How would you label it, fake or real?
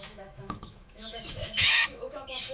fake